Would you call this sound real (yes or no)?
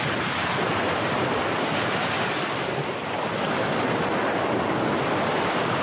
yes